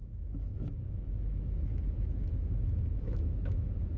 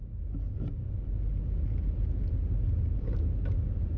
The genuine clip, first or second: second